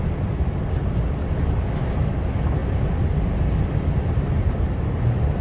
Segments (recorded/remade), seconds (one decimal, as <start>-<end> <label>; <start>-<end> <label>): 0.0-5.4 recorded